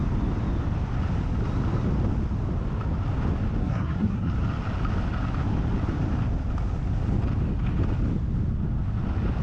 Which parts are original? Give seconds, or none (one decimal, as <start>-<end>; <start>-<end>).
0.0-3.6; 4.3-9.4